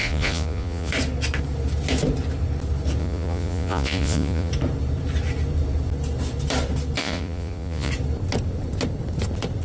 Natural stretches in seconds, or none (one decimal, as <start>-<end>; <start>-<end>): 0.9-3.0; 4.5-7.0; 7.9-9.6